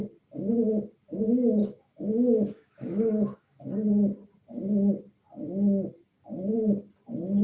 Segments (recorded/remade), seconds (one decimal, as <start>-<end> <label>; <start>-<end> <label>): 0.0-1.6 recorded; 1.6-3.6 remade; 3.6-7.4 recorded